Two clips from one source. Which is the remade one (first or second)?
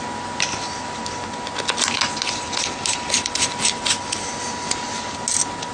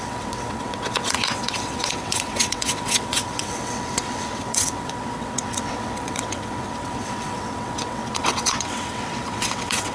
second